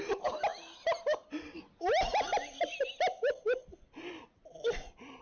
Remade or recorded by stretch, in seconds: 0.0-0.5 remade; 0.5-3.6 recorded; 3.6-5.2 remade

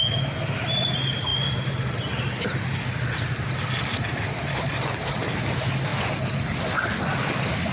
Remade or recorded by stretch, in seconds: 0.0-7.7 recorded

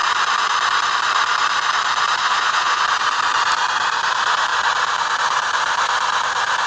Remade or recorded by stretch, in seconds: 0.0-2.2 recorded; 2.2-2.8 remade; 2.8-6.7 recorded